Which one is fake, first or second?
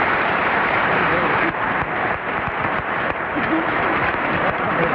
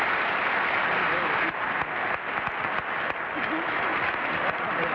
first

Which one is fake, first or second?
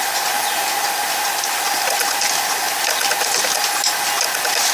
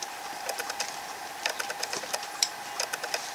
second